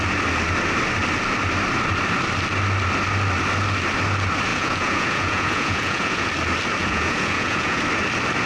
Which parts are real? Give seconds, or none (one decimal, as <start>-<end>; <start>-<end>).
0.0-4.5; 6.3-6.8; 7.8-8.5

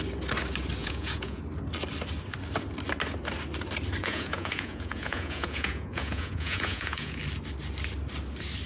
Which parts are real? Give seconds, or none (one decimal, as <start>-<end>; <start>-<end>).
0.0-0.8; 1.4-4.0; 7.2-8.7

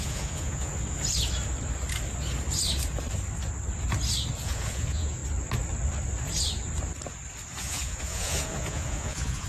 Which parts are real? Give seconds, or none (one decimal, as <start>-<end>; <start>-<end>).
0.7-4.4; 5.2-7.6